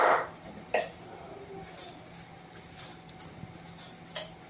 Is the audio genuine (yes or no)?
yes